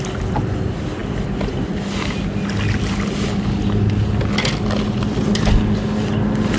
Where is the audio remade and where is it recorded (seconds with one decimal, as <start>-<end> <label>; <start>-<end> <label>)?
0.0-6.6 recorded